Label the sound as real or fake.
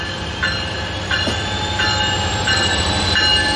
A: real